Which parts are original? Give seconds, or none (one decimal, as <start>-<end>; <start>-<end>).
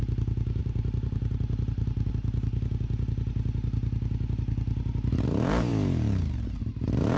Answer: 0.0-0.6; 2.1-7.2